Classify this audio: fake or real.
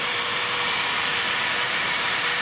fake